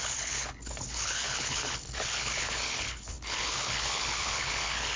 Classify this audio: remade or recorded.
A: remade